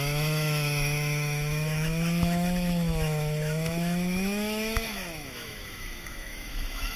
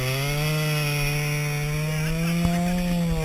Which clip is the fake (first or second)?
first